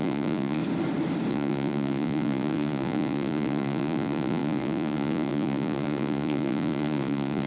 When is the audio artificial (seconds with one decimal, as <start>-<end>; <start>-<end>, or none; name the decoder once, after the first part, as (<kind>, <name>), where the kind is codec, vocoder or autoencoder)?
0.0-0.6 (vocoder, Vocos); 1.3-7.5